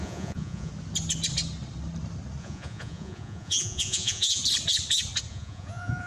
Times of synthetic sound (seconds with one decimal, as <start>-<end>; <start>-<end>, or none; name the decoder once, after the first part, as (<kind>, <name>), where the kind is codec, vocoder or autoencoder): 0.0-0.7 (vocoder, Vocos); 2.4-4.4; 5.3-6.1